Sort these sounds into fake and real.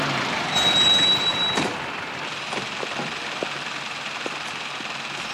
real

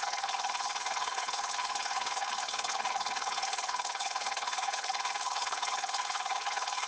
fake